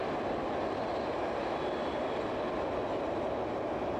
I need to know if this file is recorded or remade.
recorded